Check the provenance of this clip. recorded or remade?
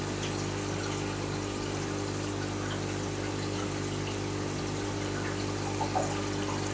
recorded